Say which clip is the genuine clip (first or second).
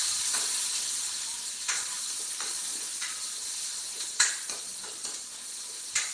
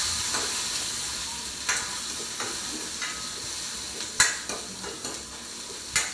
second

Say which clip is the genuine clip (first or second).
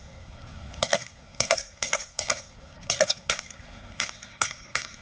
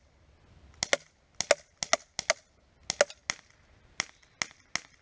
second